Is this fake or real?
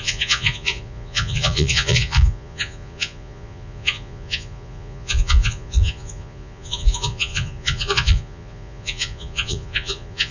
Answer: fake